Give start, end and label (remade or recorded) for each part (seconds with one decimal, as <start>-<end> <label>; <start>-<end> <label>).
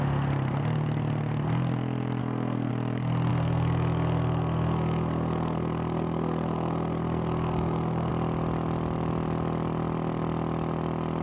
0.0-2.2 recorded; 2.2-2.7 remade; 2.7-3.3 recorded; 3.3-8.1 remade; 8.1-11.2 recorded